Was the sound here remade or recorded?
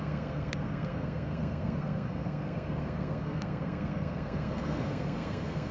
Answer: remade